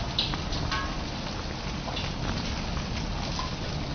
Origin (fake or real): real